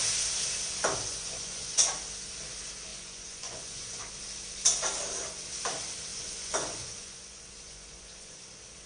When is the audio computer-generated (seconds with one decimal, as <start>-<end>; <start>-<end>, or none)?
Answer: 1.1-1.9; 2.9-4.0; 6.1-8.5